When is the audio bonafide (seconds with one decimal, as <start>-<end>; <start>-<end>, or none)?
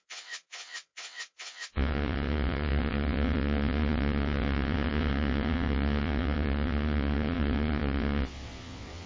none